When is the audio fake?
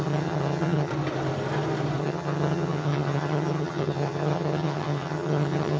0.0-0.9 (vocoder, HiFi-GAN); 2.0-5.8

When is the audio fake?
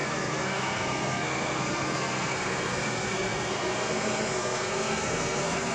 0.0-5.7 (codec, SNAC)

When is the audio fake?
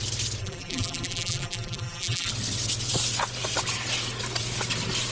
0.4-2.3 (vocoder, BigVGAN v2)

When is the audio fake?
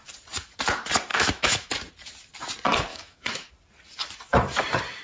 1.1-1.7 (autoencoder, DAC-VAE); 2.9-3.5